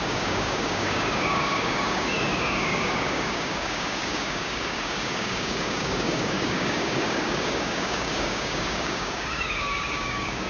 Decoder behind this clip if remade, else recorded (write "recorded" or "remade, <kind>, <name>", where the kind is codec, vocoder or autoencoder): remade, codec, DAC